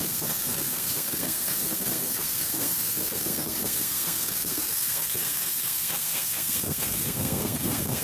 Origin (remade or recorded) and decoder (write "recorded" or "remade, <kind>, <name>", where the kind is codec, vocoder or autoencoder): remade, codec, SNAC